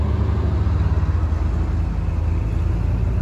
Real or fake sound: real